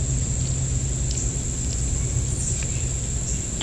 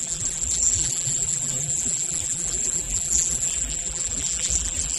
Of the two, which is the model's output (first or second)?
second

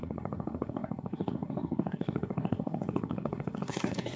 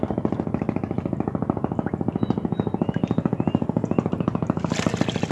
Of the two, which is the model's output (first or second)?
first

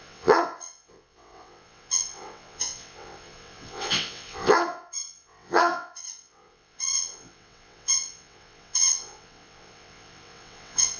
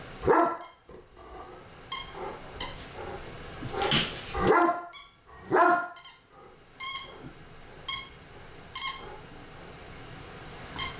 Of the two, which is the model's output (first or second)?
first